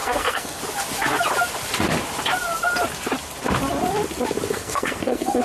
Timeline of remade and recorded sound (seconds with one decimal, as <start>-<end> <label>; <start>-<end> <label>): 0.0-0.6 remade; 0.6-4.5 recorded; 4.5-5.4 remade